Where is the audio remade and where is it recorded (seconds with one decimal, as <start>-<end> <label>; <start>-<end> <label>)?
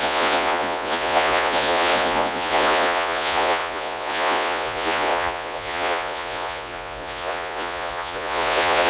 0.0-8.9 remade